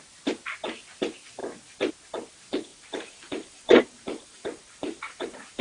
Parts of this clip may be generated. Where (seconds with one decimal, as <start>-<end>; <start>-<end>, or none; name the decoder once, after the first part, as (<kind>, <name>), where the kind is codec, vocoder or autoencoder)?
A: 2.7-5.6 (vocoder, BigVGAN v2)